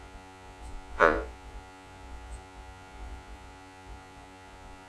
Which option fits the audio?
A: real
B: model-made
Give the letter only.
B